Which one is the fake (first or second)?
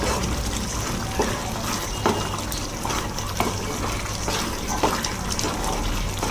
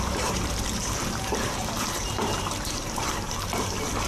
second